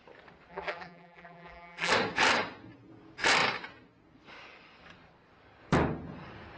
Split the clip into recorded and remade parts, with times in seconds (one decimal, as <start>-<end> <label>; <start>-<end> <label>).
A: 0.0-0.5 recorded; 0.5-1.9 remade; 1.9-6.6 recorded